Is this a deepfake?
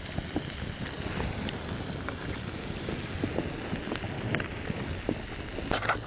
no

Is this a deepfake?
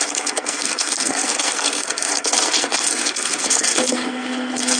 yes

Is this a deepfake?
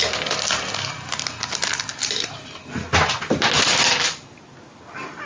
no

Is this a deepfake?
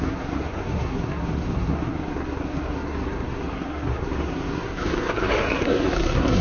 yes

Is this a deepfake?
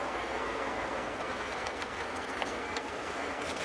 yes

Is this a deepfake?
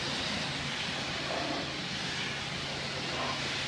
no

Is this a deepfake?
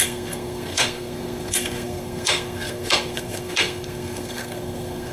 yes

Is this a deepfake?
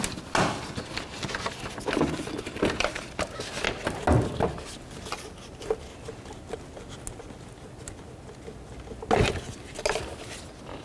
no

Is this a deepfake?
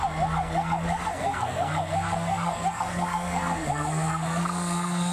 yes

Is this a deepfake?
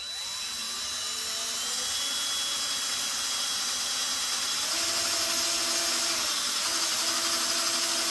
no